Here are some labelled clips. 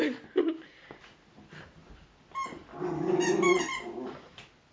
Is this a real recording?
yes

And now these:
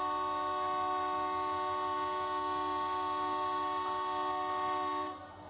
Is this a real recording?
yes